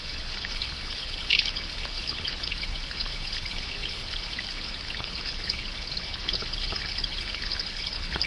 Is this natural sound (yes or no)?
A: no